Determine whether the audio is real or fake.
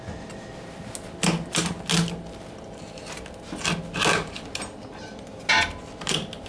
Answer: real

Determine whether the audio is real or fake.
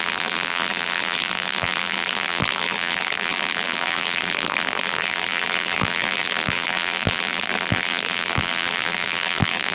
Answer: fake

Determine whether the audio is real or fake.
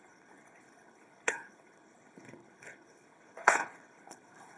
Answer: fake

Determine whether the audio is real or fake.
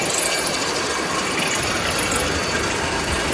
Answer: fake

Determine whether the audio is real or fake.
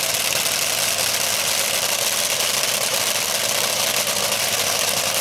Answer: real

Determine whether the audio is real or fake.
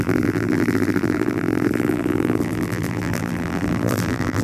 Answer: fake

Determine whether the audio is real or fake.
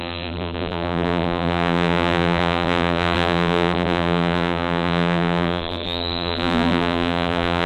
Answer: fake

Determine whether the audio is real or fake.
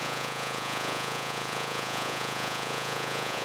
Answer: fake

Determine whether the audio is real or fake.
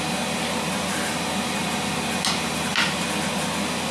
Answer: real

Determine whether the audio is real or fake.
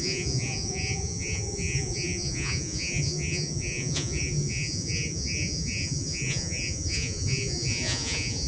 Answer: fake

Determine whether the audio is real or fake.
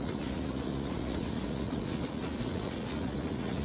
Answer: fake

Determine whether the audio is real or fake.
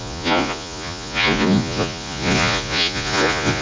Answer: fake